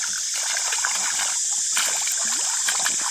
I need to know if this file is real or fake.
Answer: real